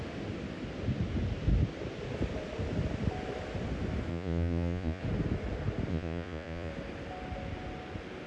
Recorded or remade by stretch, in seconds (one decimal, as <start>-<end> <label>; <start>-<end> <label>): 0.0-4.1 recorded; 4.1-5.0 remade; 5.0-5.9 recorded; 5.9-6.7 remade; 6.7-8.3 recorded